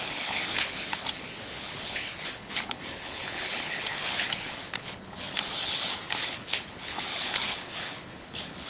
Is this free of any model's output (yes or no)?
no